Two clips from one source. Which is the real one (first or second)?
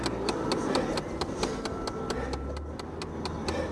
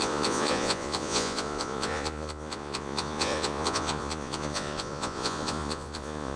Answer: first